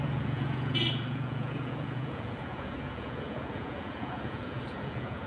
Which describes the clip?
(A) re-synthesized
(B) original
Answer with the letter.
A